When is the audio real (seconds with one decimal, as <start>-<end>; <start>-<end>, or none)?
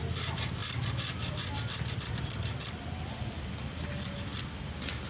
0.0-5.1